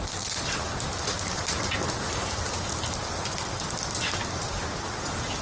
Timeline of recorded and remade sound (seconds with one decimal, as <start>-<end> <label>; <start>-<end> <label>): 0.0-2.2 recorded; 2.2-4.8 remade; 4.8-5.4 recorded